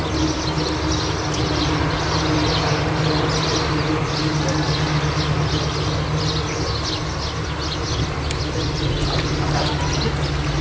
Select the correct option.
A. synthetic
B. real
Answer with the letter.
B